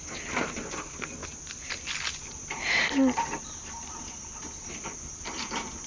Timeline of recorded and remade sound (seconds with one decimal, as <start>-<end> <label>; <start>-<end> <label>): 0.0-5.9 recorded

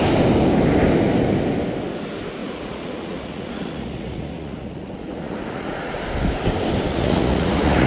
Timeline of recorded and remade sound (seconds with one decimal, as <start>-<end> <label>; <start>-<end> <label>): 0.0-2.4 recorded; 2.4-6.0 remade; 6.0-6.9 recorded; 6.9-7.9 remade

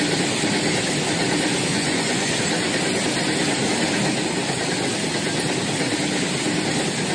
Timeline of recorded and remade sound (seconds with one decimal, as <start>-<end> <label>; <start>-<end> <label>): 0.0-1.7 recorded; 1.7-2.4 remade; 2.4-7.1 recorded

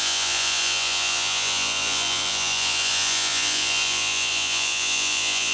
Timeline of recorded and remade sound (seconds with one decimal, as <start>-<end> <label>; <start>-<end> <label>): 0.0-5.5 remade

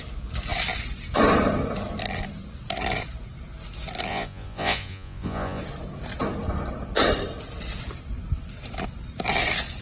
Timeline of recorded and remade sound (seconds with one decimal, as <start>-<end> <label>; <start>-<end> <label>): 0.0-4.1 recorded; 4.1-5.6 remade; 5.6-9.8 recorded

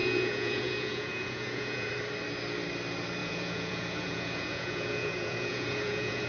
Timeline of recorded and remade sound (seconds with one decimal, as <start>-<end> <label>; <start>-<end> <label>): 0.0-1.9 remade; 1.9-3.2 recorded; 3.2-6.3 remade

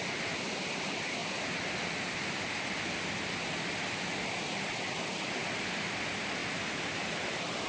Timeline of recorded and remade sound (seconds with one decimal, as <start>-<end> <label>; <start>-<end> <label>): 0.0-7.7 recorded